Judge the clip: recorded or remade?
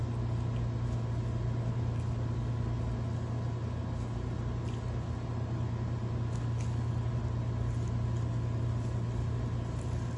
recorded